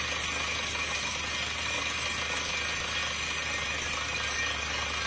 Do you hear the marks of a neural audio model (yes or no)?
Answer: no